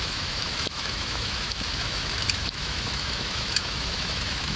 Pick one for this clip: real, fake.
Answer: fake